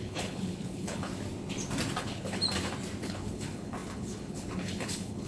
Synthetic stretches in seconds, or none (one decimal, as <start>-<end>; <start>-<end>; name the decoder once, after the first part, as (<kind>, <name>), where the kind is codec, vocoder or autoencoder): 0.0-1.1 (codec, HILCodec); 2.0-2.4; 3.0-5.3